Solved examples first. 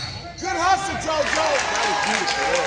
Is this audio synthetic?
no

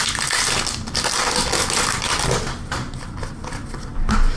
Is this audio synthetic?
no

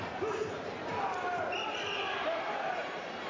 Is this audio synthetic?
no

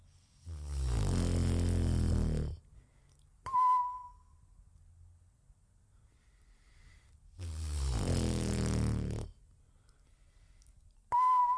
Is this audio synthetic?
no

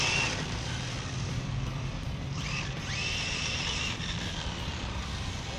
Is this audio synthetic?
yes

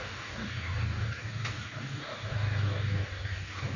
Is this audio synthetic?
yes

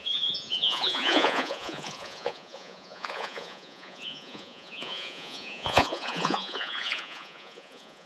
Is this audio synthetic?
yes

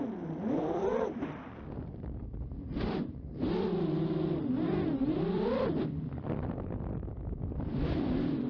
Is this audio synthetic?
yes